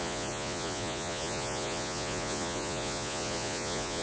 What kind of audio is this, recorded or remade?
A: remade